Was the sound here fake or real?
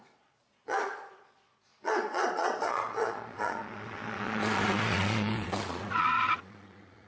fake